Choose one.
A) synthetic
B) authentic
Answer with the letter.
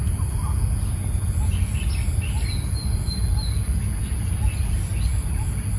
B